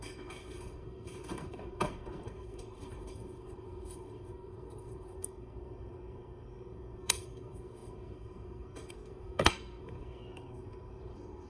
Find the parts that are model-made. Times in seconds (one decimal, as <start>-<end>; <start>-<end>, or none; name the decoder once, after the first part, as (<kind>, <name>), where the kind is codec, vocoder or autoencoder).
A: 0.0-11.5 (codec, SNAC)